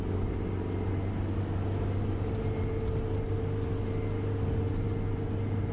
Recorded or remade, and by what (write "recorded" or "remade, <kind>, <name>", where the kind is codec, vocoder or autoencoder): recorded